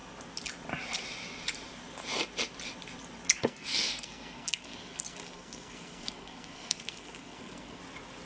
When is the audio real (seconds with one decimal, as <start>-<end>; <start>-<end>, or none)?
0.0-3.4; 7.8-8.3